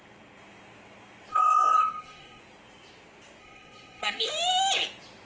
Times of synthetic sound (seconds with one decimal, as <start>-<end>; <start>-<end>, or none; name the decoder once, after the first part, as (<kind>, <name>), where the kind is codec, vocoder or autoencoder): 1.3-2.4 (codec, SNAC); 3.4-4.3